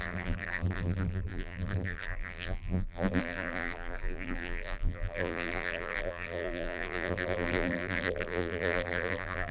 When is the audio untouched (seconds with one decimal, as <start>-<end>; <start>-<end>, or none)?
none